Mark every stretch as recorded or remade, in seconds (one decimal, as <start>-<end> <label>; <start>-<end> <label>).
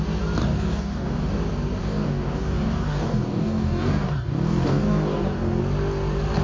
0.0-0.4 recorded; 0.4-1.3 remade; 1.3-1.8 recorded; 1.8-5.6 remade; 5.6-6.4 recorded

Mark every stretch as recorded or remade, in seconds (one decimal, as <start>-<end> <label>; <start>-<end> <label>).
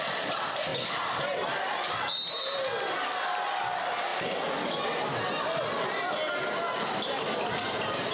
0.0-8.1 recorded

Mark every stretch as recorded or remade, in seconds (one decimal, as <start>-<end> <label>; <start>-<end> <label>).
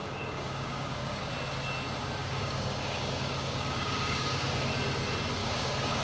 0.0-1.3 remade; 1.3-2.2 recorded; 2.2-4.6 remade; 4.6-5.4 recorded; 5.4-6.0 remade